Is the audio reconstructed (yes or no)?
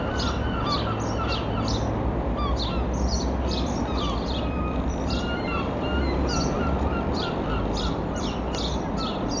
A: no